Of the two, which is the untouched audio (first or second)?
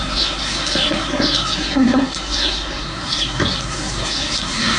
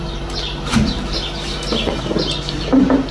second